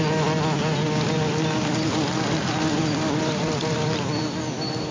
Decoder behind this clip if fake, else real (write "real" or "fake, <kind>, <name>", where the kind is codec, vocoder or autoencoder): real